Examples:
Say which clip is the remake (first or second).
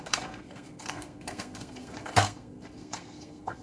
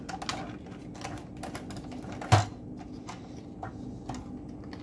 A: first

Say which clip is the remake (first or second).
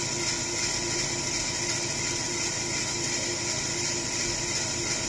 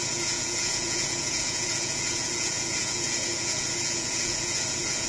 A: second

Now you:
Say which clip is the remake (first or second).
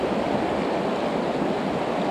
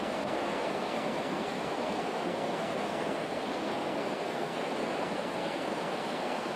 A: second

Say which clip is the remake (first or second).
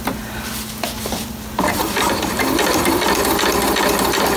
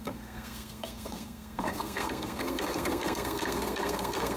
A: second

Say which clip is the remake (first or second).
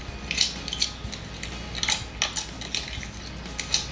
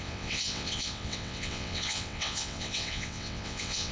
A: second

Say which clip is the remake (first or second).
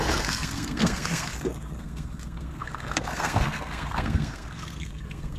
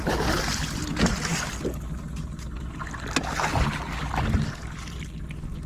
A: first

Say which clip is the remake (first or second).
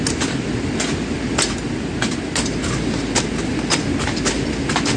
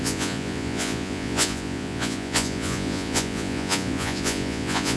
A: second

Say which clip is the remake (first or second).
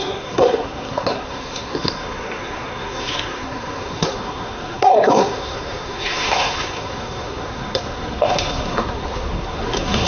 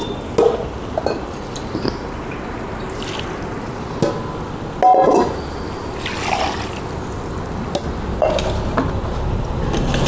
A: first